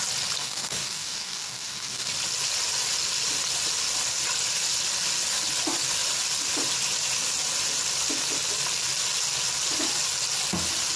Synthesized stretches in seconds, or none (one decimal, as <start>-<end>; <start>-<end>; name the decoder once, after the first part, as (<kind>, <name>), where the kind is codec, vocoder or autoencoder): 0.4-2.1 (codec, DAC)